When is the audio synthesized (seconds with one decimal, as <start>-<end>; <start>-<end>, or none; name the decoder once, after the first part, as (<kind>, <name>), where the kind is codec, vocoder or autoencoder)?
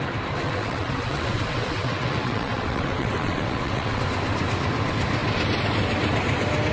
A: 0.4-4.0 (vocoder, WaveNeXt)